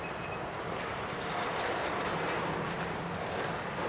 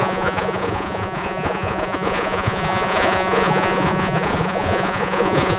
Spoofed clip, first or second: second